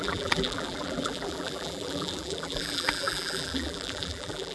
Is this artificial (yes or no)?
yes